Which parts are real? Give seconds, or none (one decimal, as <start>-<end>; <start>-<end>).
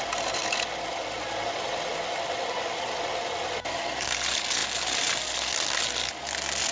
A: 0.0-6.7